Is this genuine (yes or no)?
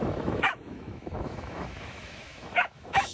no